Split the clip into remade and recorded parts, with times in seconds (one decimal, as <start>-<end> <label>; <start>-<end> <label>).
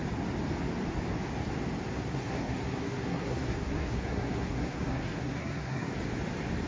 0.0-1.9 recorded; 1.9-5.9 remade; 5.9-6.7 recorded